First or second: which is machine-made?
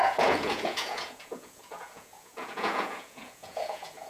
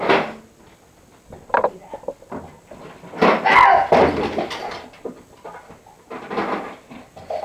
first